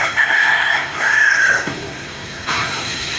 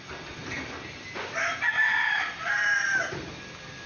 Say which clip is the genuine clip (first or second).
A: second